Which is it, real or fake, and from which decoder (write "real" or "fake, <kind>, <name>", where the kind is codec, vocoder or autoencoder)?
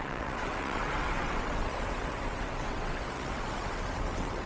fake, vocoder, WaveNeXt